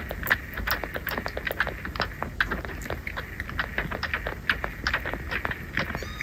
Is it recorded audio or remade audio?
recorded